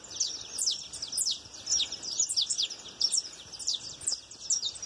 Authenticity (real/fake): real